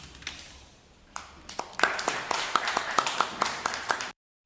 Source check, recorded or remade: remade